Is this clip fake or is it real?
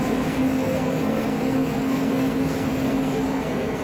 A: fake